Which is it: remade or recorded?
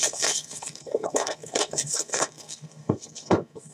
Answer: remade